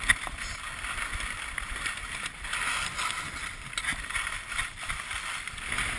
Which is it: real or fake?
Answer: real